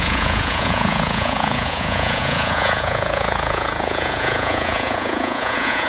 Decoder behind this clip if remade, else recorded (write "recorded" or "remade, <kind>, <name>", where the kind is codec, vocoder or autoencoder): remade, vocoder, Vocos